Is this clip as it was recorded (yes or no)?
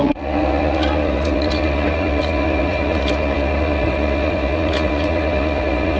no